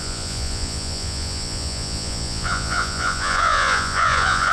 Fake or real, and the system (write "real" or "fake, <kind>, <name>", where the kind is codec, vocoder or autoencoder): fake, vocoder, Vocos